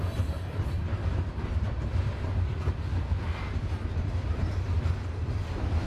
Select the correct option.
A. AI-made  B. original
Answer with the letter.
B